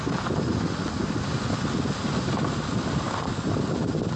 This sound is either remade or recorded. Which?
recorded